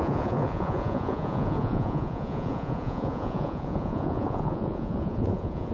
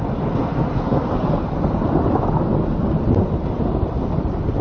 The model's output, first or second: first